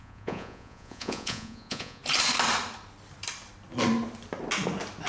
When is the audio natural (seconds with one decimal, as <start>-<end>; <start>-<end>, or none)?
2.0-5.1